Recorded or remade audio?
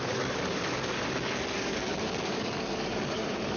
remade